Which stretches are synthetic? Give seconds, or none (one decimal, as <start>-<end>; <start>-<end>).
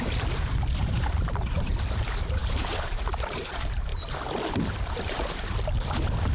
0.0-3.9; 4.5-6.3